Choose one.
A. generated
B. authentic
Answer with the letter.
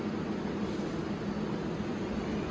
B